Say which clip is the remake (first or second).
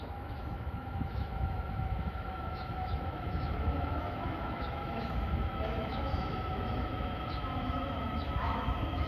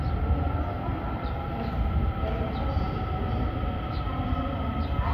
first